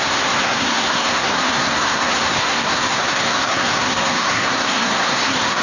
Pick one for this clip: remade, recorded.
remade